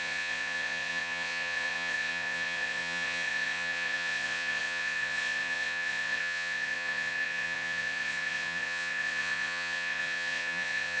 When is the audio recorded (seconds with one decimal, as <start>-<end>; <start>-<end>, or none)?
none